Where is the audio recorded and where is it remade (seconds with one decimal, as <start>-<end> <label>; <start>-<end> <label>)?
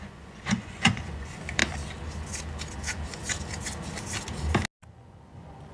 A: 0.0-1.6 remade; 1.6-4.9 recorded; 4.9-5.7 remade